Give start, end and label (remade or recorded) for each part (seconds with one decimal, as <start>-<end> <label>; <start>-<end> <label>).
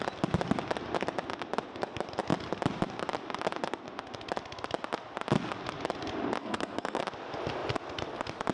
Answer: 0.0-6.4 recorded; 6.4-7.0 remade; 7.0-8.5 recorded